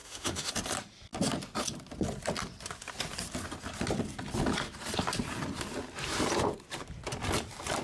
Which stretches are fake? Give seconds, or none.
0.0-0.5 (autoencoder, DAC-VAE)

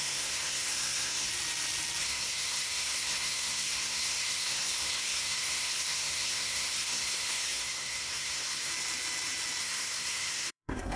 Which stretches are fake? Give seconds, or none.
0.0-1.3 (codec, SNAC); 2.0-8.7; 9.6-11.0

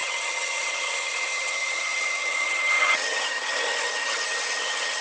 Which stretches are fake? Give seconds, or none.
0.0-5.0 (vocoder, HiFi-GAN)